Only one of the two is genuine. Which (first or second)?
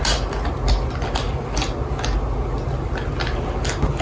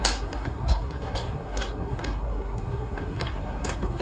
first